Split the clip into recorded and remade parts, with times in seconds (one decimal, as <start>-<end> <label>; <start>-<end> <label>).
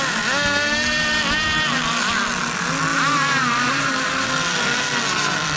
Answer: 0.0-2.9 recorded; 2.9-4.3 remade; 4.3-5.6 recorded